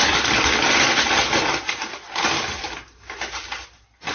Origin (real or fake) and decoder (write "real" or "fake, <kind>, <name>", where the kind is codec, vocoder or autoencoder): real